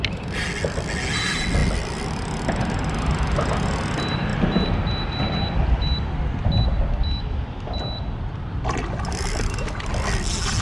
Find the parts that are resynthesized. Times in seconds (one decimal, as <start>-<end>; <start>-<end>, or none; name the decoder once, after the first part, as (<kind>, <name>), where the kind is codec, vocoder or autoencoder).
none